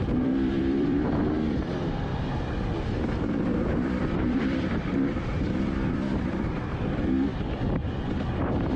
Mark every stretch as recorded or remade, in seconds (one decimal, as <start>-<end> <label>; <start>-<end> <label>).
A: 0.0-2.1 remade; 2.1-3.6 recorded; 3.6-8.8 remade